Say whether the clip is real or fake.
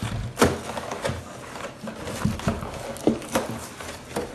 real